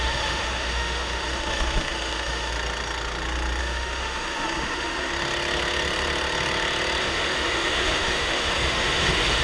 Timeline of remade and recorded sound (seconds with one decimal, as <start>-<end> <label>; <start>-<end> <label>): 0.0-2.5 remade; 2.5-3.6 recorded; 3.6-5.1 remade; 5.1-7.0 recorded; 7.0-9.4 remade

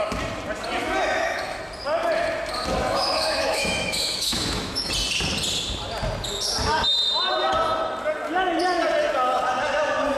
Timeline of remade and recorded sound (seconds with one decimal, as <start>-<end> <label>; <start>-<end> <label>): 0.0-0.8 recorded; 0.8-1.6 remade; 1.6-2.8 recorded; 2.8-4.9 remade; 4.9-10.2 recorded

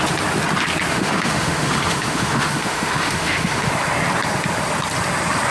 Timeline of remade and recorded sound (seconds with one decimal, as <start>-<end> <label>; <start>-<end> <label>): 0.0-0.9 recorded; 0.9-3.7 remade; 3.7-5.5 recorded

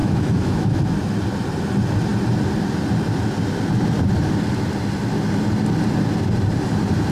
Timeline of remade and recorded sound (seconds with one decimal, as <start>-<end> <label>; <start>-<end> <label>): 0.0-0.8 remade; 0.8-7.1 recorded

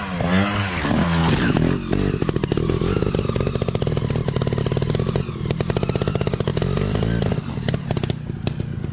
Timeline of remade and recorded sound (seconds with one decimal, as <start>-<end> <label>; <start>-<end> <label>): 0.0-8.9 recorded

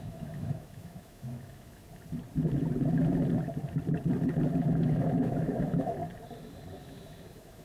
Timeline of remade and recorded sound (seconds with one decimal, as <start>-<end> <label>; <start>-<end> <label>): 0.0-1.8 remade; 1.8-4.6 recorded; 4.6-6.0 remade; 6.0-6.7 recorded; 6.7-7.6 remade

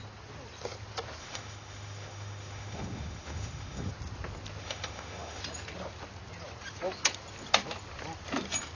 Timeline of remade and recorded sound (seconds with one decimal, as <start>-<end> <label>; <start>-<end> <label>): 0.0-1.2 recorded; 1.2-3.9 remade; 3.9-4.6 recorded; 4.6-5.4 remade; 5.4-8.7 recorded